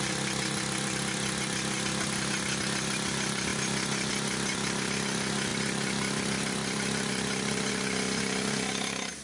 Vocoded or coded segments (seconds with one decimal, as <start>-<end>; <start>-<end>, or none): none